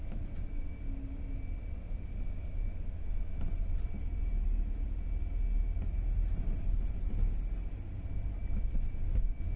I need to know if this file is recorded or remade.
recorded